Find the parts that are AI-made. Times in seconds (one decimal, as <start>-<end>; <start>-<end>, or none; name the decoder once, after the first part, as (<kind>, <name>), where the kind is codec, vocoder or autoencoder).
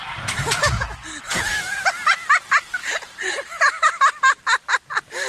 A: 2.8-3.9 (vocoder, BigVGAN v2)